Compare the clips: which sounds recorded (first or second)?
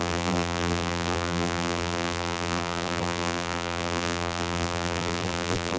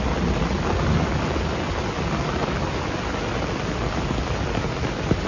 second